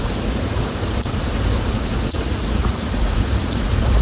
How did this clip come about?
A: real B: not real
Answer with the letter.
B